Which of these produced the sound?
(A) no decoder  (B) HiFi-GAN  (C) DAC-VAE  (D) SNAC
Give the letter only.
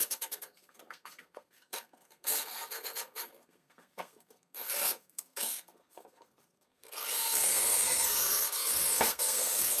D